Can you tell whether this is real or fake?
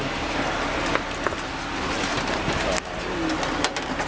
real